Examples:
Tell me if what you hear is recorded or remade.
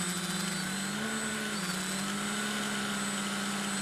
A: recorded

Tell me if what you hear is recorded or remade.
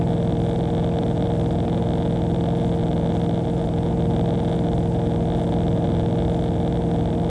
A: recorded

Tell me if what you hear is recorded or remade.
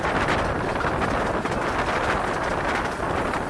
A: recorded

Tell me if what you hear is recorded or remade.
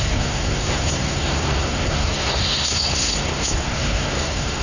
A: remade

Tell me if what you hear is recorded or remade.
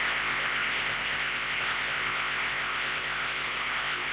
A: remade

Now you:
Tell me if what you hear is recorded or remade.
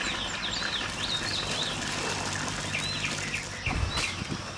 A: recorded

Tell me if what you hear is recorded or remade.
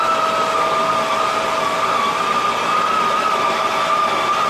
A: recorded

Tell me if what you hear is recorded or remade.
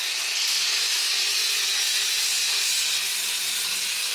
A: recorded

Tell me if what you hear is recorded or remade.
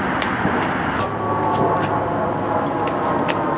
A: recorded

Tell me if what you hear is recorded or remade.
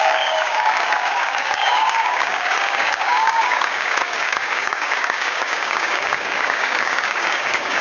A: remade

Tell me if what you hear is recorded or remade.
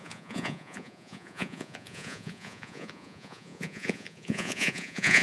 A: remade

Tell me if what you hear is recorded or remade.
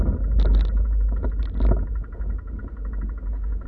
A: recorded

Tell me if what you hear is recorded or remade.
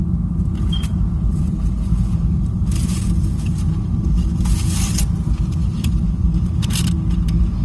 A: recorded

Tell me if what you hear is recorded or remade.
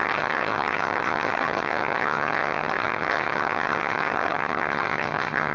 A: remade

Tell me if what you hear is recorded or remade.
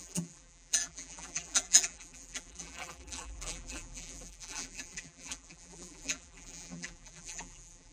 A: remade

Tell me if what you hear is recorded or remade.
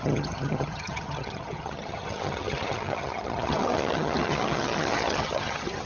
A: remade